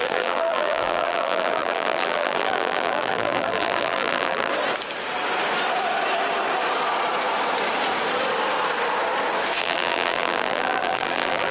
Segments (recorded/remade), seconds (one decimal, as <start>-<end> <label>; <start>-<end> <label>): 0.0-4.5 remade; 4.5-9.6 recorded; 9.6-11.5 remade